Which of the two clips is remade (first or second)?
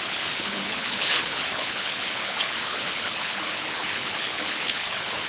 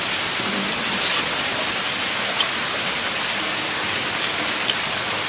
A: first